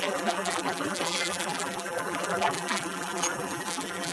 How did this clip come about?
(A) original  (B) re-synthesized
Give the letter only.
B